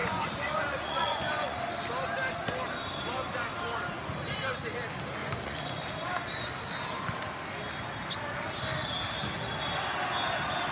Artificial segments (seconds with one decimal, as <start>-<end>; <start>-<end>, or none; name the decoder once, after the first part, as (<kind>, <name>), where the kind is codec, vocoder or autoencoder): 0.0-1.6 (vocoder, Vocos); 5.2-5.9